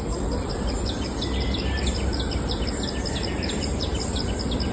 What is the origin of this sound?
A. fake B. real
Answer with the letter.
B